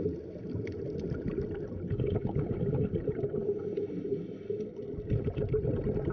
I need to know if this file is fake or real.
real